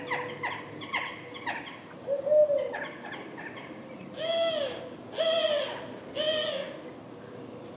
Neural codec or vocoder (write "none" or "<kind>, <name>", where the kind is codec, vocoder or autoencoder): none